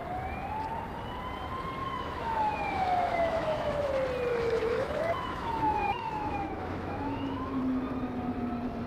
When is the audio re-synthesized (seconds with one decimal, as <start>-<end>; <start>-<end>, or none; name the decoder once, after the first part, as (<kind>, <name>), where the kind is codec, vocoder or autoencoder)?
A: 1.8-3.9 (autoencoder, DAC-VAE); 4.3-7.6